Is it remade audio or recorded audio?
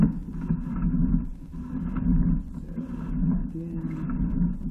recorded